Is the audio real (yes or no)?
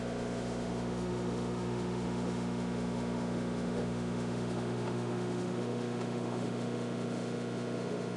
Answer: no